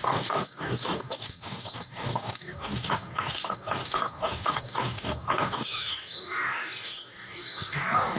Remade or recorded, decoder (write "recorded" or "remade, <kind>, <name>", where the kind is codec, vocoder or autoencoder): remade, codec, DAC